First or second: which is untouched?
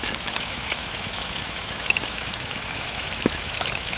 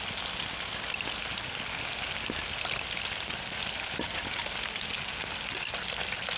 second